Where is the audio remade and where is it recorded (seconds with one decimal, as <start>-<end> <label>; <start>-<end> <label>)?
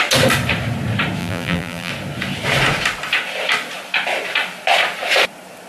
0.0-1.2 recorded; 1.2-1.9 remade; 1.9-5.7 recorded